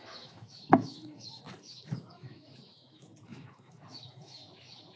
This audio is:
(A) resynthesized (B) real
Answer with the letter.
A